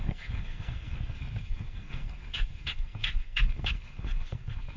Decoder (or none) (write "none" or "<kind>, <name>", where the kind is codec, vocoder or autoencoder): codec, SNAC